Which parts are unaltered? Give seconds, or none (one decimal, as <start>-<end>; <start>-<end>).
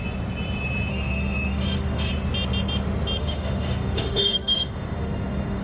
0.0-0.9; 2.1-3.2